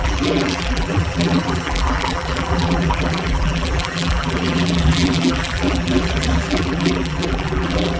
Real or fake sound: fake